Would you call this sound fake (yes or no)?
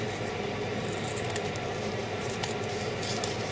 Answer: yes